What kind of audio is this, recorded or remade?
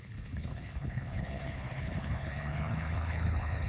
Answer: remade